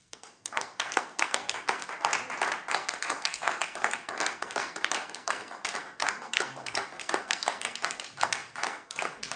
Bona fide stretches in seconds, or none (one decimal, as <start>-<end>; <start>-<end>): 2.1-2.7